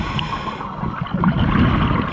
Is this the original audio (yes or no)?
yes